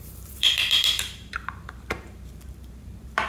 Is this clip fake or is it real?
fake